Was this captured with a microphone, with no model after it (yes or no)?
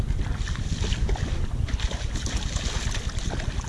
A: yes